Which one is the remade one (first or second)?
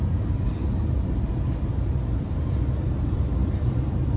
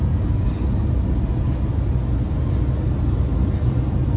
first